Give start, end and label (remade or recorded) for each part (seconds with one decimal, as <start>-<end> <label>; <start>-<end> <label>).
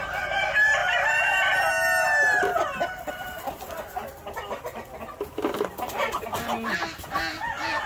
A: 0.0-7.9 recorded